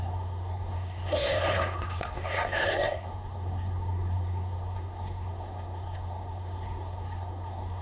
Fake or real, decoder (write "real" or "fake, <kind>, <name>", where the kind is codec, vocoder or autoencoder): fake, codec, SNAC